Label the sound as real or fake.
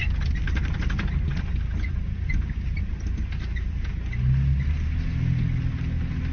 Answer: real